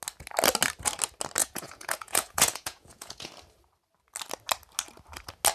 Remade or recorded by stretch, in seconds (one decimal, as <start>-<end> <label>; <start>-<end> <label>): 0.0-1.4 recorded; 1.4-3.3 remade; 3.3-5.5 recorded